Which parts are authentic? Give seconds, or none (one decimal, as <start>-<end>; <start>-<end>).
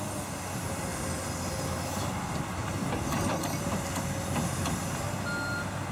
0.0-5.9